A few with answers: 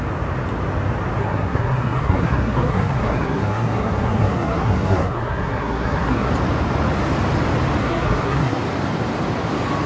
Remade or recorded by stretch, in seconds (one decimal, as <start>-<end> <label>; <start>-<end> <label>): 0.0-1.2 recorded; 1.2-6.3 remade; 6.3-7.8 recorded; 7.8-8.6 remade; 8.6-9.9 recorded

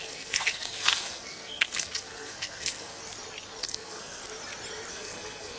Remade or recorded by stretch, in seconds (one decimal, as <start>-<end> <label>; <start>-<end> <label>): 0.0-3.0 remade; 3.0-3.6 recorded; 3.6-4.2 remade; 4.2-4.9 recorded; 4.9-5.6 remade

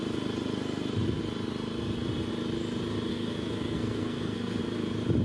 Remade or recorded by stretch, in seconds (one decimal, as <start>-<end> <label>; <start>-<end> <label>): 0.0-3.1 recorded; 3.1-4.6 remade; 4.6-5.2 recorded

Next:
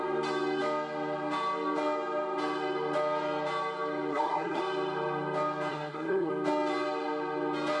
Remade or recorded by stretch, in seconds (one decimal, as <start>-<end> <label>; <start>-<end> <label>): 0.0-4.1 recorded; 4.1-4.6 remade; 4.6-5.7 recorded; 5.7-6.3 remade; 6.3-7.8 recorded